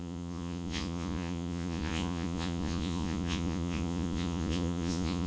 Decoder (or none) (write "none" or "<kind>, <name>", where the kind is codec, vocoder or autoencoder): vocoder, Vocos